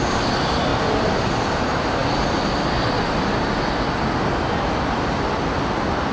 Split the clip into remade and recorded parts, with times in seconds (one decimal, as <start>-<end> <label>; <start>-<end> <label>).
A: 0.0-6.1 recorded